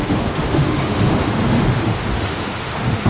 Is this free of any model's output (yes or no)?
no